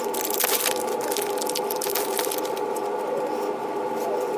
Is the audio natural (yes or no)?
yes